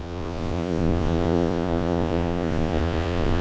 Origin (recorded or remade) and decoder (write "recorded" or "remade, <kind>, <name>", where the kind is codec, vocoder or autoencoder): remade, vocoder, Vocos